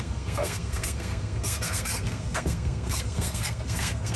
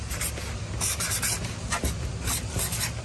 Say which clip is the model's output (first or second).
first